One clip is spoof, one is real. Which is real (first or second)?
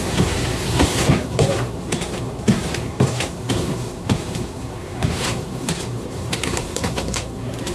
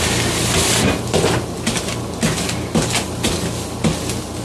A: second